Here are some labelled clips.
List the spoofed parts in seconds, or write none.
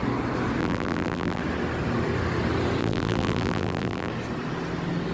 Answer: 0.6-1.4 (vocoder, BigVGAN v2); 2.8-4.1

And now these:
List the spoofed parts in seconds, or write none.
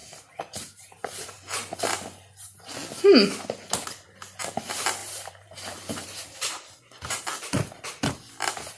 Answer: 0.0-1.9 (vocoder, BigVGAN v2); 5.0-6.2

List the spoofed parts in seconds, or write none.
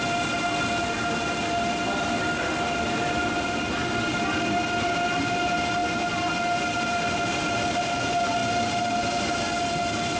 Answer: none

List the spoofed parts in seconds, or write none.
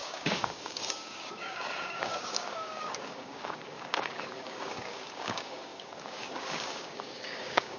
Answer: 0.0-7.8 (codec, DAC)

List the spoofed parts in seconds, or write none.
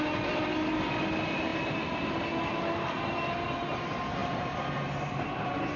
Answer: none